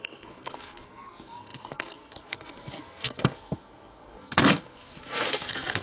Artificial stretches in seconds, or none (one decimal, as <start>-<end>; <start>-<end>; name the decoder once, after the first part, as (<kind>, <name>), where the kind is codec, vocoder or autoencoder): 0.0-5.8 (codec, SNAC)